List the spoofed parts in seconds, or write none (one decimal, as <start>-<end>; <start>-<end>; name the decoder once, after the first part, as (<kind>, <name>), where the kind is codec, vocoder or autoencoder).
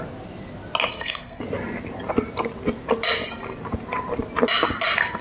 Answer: 0.9-1.4 (codec, SNAC)